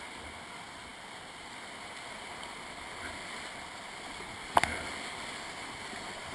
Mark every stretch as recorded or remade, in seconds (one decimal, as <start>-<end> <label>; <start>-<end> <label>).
0.0-6.3 recorded